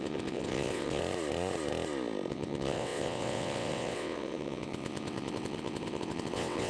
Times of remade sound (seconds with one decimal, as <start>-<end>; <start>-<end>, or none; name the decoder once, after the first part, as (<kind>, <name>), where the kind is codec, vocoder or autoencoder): 0.0-1.0 (vocoder, WaveNeXt); 2.3-6.7